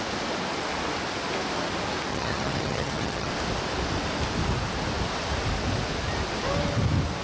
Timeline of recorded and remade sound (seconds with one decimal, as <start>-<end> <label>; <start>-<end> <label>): 0.0-2.1 recorded; 2.1-3.3 remade; 3.3-7.2 recorded